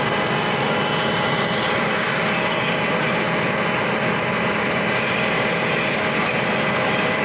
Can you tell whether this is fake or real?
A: real